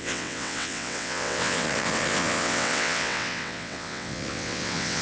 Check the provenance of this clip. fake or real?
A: fake